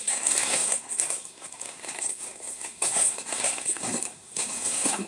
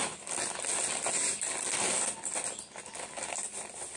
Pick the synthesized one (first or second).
first